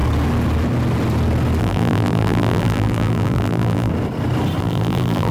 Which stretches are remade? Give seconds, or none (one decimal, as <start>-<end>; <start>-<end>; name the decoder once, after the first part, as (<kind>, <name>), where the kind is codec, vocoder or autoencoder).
1.6-3.9 (vocoder, BigVGAN v2); 4.6-5.3